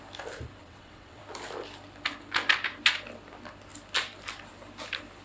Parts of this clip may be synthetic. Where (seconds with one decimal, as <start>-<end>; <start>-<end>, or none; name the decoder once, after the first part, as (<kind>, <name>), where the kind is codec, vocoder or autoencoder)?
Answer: 0.6-1.2 (vocoder, WaveNeXt)